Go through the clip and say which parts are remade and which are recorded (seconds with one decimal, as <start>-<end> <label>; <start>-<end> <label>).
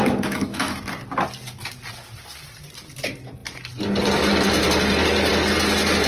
0.0-0.8 remade; 0.8-6.1 recorded